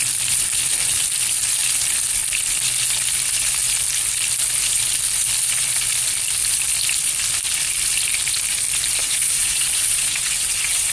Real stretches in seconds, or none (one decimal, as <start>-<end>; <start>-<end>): 0.0-9.0